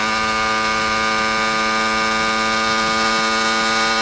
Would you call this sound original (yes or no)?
yes